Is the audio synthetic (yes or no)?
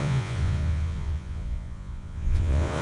yes